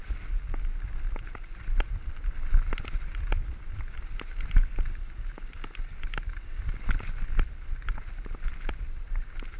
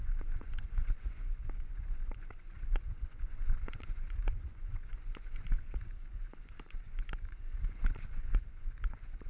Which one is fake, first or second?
second